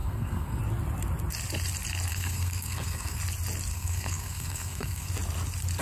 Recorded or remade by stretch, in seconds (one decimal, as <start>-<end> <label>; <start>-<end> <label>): 0.0-0.6 remade; 0.6-2.1 recorded; 2.1-3.2 remade; 3.2-3.7 recorded; 3.7-5.1 remade; 5.1-5.8 recorded